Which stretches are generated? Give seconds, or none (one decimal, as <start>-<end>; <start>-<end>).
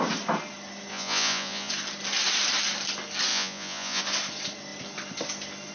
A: 0.9-1.7; 3.3-4.0